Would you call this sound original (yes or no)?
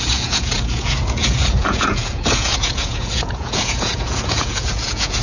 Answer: no